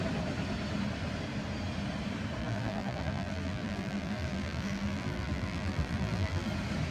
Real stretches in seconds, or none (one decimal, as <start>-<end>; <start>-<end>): 0.0-2.4; 6.5-6.9